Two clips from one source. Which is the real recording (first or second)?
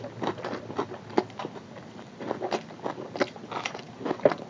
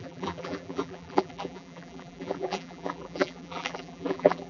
first